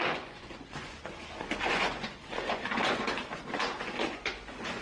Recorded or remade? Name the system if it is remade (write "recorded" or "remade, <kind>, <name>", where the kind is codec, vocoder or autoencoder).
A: remade, vocoder, Vocos